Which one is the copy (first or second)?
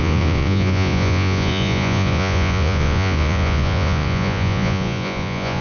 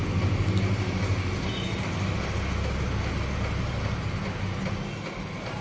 first